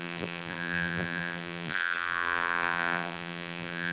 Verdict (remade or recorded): remade